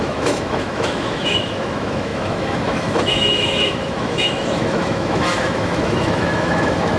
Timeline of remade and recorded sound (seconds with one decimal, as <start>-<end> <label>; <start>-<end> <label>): 0.0-7.0 remade